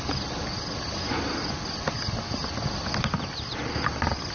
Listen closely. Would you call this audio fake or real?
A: real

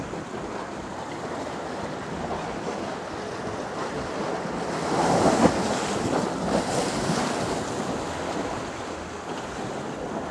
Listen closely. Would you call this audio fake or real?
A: real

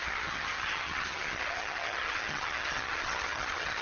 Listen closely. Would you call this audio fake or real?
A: fake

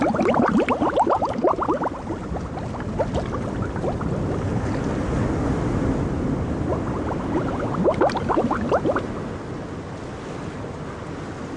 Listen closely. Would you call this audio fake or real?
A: real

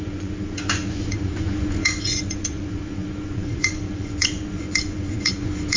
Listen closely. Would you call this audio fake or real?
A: fake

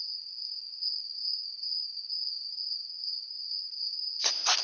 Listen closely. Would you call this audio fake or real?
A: fake